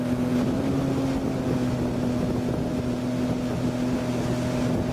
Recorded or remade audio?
recorded